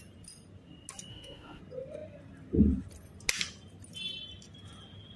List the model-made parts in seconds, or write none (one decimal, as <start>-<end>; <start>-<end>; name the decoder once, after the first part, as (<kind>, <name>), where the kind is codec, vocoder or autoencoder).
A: 1.1-1.6 (autoencoder, DAC-VAE)